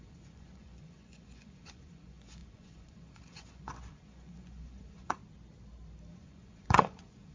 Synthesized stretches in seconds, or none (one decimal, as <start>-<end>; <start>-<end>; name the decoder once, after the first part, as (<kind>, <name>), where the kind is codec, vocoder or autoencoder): 0.0-5.2 (vocoder, Vocos); 6.1-7.3

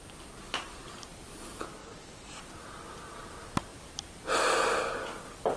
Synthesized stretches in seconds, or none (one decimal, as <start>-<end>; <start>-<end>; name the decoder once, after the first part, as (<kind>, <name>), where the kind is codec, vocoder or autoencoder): 1.8-2.4 (vocoder, Vocos)